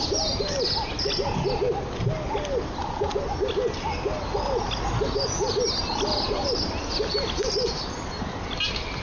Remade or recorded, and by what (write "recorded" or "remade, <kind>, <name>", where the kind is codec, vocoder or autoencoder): recorded